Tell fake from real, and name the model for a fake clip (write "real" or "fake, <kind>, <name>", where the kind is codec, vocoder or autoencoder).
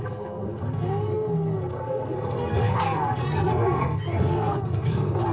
fake, codec, SNAC